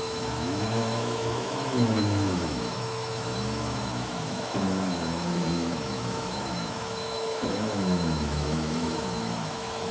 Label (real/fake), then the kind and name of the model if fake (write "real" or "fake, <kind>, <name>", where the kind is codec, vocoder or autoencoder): fake, autoencoder, DAC-VAE